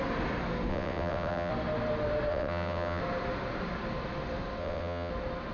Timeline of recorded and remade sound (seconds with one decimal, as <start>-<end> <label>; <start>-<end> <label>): 0.0-0.7 recorded; 0.7-1.5 remade; 1.5-2.3 recorded; 2.3-3.0 remade; 3.0-4.6 recorded; 4.6-5.1 remade; 5.1-5.5 recorded